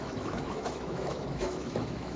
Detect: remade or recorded remade